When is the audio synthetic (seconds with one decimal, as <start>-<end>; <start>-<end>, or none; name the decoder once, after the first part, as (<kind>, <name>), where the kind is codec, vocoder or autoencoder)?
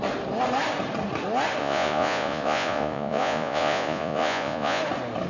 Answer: 1.6-4.8 (vocoder, Vocos)